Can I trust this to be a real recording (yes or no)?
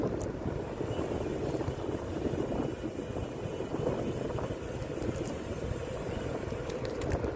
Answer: yes